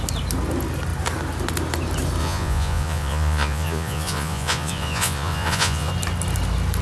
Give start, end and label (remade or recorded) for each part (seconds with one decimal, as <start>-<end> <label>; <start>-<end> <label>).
0.0-2.2 recorded; 2.2-5.9 remade; 5.9-6.8 recorded